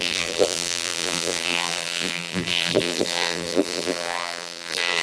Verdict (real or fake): fake